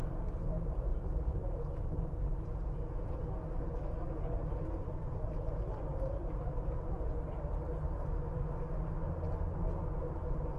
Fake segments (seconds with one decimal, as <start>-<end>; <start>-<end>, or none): 0.9-1.8